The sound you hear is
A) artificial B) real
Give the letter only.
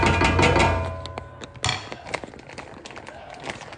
B